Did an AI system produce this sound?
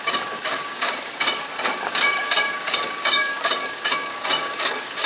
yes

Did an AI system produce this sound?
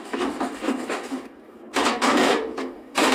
yes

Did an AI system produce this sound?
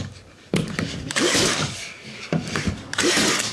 yes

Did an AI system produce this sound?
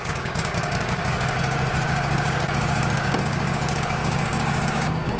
yes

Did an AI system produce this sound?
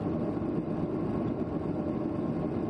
no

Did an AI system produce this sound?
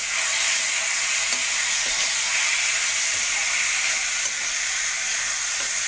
no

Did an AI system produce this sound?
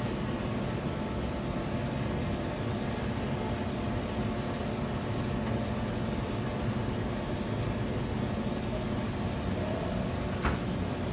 no